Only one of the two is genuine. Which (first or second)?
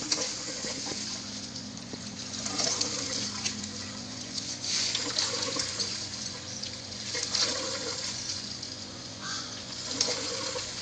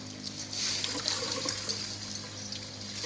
second